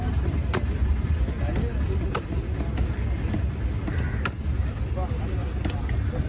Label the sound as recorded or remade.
recorded